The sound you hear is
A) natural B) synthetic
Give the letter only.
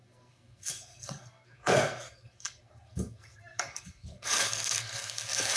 B